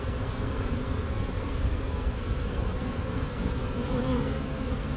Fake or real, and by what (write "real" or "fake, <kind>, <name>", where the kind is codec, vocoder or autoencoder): fake, codec, SNAC